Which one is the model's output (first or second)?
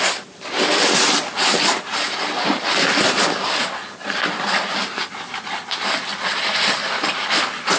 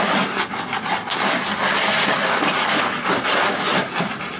first